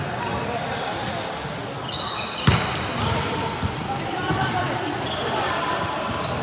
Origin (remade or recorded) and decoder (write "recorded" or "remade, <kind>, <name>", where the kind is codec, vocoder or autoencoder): recorded